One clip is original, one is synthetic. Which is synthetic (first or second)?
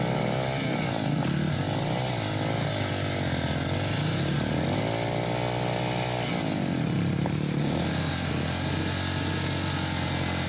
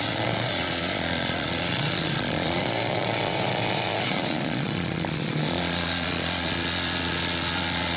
second